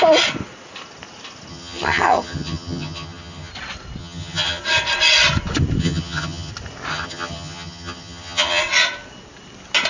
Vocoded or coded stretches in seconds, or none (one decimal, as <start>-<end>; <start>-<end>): 1.5-3.5; 4.0-4.6; 5.8-6.5; 6.9-8.6